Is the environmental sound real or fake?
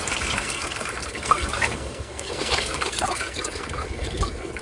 fake